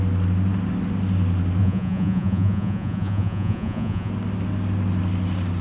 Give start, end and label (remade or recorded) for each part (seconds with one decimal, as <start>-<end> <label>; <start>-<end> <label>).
0.0-1.6 recorded; 1.6-4.1 remade; 4.1-5.6 recorded

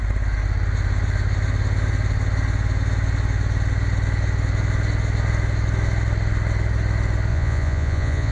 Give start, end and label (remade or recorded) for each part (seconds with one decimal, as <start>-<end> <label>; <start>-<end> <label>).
0.0-7.3 recorded; 7.3-8.3 remade